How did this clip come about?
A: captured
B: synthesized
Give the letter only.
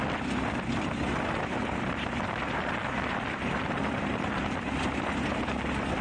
B